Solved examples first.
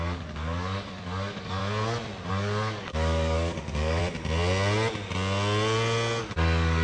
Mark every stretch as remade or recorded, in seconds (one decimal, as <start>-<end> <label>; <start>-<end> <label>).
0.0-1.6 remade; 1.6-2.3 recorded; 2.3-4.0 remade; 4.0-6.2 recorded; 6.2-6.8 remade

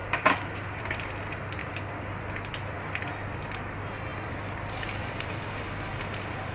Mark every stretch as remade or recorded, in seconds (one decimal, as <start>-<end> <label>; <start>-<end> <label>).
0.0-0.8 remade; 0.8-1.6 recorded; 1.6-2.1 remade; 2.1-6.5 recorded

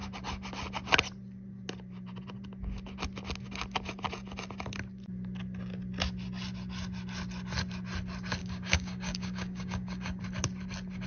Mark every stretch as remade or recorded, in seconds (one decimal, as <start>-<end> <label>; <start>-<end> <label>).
0.0-8.4 recorded; 8.4-10.2 remade; 10.2-11.1 recorded